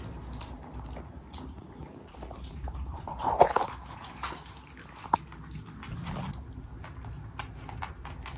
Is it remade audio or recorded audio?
recorded